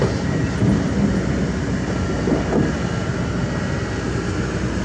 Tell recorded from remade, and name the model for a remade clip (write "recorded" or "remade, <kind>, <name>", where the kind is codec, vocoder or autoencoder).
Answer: recorded